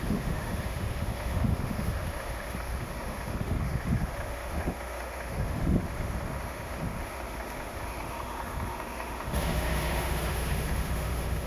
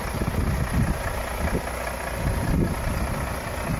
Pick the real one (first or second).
second